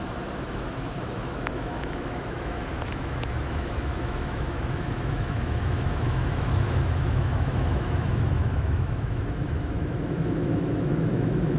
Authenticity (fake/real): fake